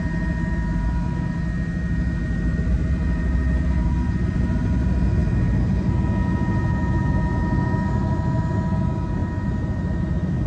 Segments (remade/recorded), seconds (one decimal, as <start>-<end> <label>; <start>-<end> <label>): 0.0-10.5 recorded